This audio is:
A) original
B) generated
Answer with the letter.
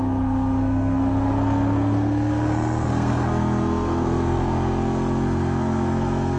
B